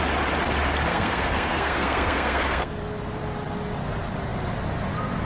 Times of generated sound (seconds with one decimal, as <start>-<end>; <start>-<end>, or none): 0.9-2.7